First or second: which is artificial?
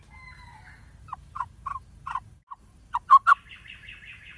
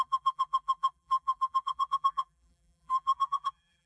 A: second